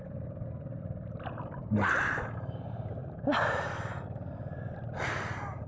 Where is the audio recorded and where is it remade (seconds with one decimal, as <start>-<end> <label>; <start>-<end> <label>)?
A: 0.0-5.7 recorded